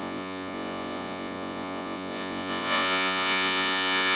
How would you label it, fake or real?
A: fake